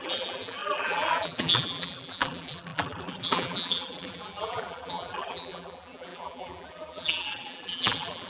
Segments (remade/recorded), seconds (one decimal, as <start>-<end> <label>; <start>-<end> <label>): 0.0-8.3 remade